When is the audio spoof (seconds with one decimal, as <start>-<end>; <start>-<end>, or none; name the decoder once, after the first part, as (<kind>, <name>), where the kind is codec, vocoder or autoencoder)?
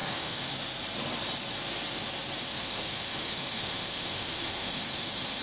0.0-0.5 (autoencoder, DAC-VAE); 2.5-5.4